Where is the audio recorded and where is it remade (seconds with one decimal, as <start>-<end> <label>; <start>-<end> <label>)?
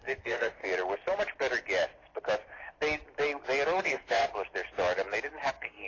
0.0-0.6 remade; 0.6-3.8 recorded; 3.8-4.3 remade; 4.3-5.5 recorded; 5.5-5.9 remade